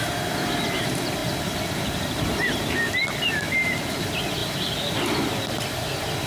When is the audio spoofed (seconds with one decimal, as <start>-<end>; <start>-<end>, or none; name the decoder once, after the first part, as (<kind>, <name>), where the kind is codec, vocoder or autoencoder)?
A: 0.0-4.4 (vocoder, BigVGAN v2); 4.9-6.3